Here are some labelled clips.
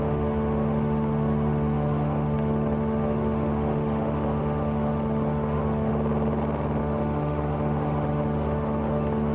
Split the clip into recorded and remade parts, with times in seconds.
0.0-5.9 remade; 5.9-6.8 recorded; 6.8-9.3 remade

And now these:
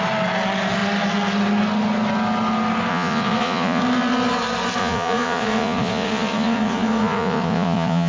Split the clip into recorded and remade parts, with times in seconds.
0.0-2.9 recorded; 2.9-3.8 remade; 3.8-4.8 recorded; 4.8-8.1 remade

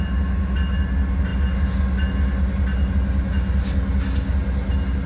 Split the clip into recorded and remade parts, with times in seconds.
0.0-5.1 recorded

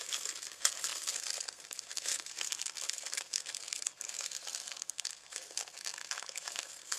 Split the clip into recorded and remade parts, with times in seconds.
0.0-7.0 remade